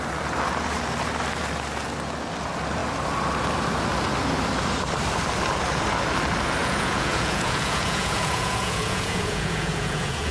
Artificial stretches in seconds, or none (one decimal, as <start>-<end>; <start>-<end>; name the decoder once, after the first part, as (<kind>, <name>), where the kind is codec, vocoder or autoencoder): 6.6-10.3 (vocoder, Vocos)